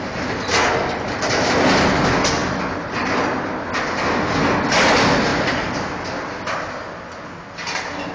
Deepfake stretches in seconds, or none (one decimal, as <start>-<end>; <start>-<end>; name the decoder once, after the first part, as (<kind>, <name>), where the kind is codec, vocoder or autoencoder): none